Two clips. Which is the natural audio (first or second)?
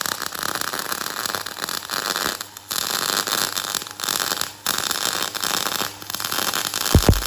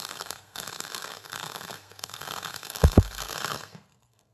first